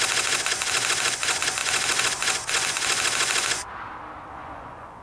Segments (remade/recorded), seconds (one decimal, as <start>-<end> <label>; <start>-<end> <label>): 0.0-3.6 remade; 3.6-4.3 recorded; 4.3-5.0 remade